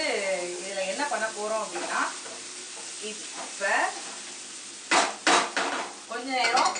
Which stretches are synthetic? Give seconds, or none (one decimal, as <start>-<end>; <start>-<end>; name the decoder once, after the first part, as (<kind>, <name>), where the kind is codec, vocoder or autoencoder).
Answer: 1.7-2.7 (vocoder, BigVGAN v2); 3.2-3.9

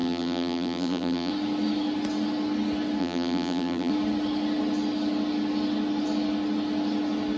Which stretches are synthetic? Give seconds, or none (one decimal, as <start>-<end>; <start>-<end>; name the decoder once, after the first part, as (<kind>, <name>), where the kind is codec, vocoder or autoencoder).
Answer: 0.0-1.3 (vocoder, BigVGAN v2); 3.0-3.9

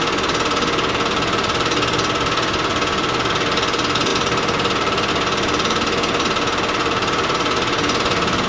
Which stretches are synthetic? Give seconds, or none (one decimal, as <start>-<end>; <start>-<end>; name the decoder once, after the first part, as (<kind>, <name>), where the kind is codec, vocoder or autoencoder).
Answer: 2.7-3.3 (vocoder, BigVGAN v2); 4.1-5.1; 6.8-8.5

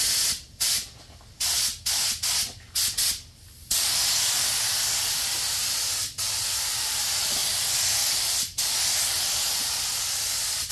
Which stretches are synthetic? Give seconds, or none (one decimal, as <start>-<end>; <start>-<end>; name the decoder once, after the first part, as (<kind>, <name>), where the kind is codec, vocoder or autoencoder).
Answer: 7.4-10.7 (vocoder, BigVGAN v2)

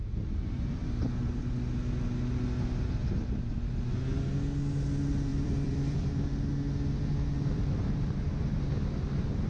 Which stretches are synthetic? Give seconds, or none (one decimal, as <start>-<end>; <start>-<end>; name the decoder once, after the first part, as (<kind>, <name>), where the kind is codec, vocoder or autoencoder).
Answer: 0.4-1.1 (vocoder, BigVGAN v2); 5.3-6.1

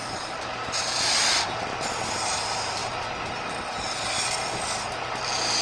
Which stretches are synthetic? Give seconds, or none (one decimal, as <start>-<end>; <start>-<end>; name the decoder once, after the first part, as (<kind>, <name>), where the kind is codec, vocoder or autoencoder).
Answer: 0.0-2.8 (vocoder, BigVGAN v2)

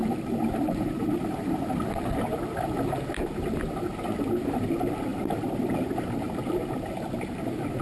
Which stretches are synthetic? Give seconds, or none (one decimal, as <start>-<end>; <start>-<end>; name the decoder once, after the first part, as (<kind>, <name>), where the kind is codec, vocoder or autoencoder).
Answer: 0.0-1.7 (vocoder, BigVGAN v2)

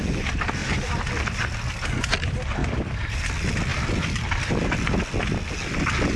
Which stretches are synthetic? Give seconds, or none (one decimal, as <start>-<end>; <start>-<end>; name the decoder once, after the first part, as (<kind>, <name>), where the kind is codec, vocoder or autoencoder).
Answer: 0.6-2.0 (vocoder, BigVGAN v2); 2.6-3.3; 3.7-4.7